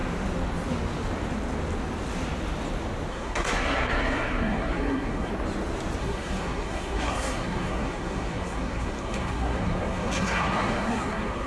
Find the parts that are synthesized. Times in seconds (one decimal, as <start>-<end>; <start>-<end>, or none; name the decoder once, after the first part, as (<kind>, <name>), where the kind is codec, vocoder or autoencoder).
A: 3.1-5.3 (codec, SNAC); 6.0-11.5